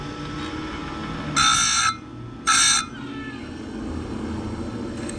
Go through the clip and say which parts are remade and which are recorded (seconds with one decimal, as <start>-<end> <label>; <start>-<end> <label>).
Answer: 0.0-3.2 recorded; 3.2-5.2 remade